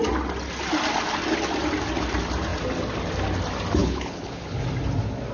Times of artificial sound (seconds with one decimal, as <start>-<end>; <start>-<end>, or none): 3.8-4.6